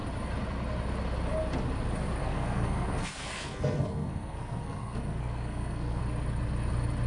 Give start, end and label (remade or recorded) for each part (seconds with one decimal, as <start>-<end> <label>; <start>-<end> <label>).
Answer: 0.0-2.2 recorded; 2.2-6.0 remade; 6.0-7.1 recorded